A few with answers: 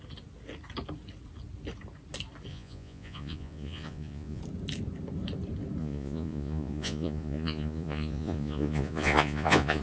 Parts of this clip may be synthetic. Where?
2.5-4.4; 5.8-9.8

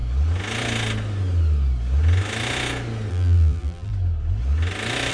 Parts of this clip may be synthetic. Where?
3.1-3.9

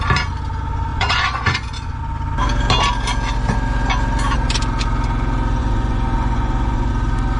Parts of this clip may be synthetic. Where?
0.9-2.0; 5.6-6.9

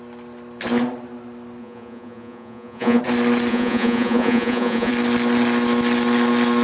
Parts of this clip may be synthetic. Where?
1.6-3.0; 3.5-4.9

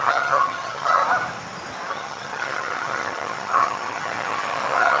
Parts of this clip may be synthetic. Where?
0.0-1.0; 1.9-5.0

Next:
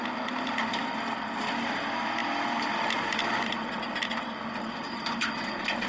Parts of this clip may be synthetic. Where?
none